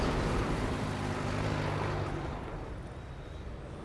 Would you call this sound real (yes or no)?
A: yes